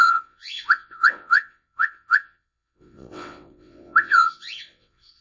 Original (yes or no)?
no